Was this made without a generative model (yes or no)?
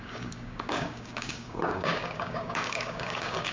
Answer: no